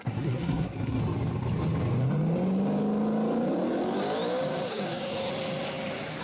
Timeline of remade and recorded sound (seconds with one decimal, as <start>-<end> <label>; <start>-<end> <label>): 0.0-1.0 remade; 1.0-4.7 recorded; 4.7-5.3 remade; 5.3-6.2 recorded